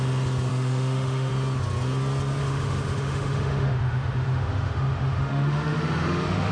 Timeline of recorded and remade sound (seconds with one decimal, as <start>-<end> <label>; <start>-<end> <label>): 0.0-0.5 recorded; 0.5-1.3 remade; 1.3-2.4 recorded; 2.4-6.5 remade